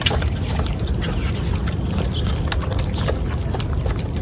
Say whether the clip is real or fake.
real